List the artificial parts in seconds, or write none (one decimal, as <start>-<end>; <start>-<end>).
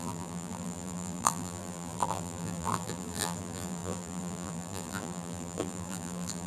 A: 0.0-6.5